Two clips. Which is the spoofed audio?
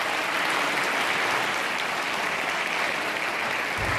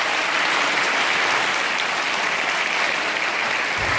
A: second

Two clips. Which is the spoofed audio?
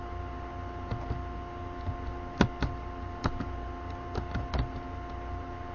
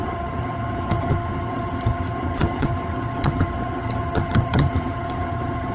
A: second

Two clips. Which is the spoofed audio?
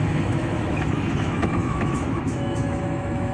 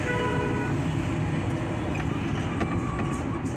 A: first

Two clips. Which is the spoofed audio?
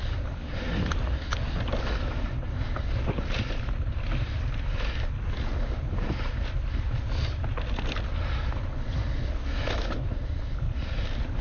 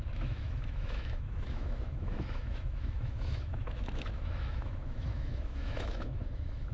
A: second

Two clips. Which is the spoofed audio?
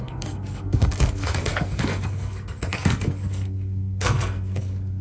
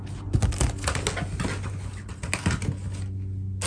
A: first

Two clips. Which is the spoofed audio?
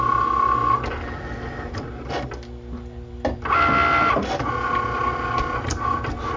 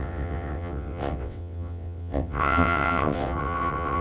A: second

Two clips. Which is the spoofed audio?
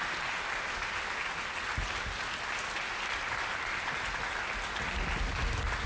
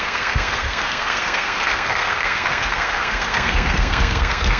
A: second